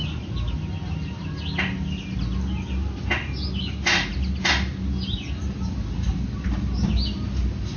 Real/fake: real